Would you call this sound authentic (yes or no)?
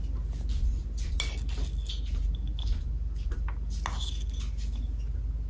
yes